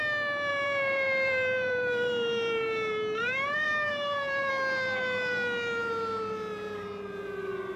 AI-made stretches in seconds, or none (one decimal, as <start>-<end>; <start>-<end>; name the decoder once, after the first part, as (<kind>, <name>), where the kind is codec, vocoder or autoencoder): 0.5-4.5 (vocoder, BigVGAN v2)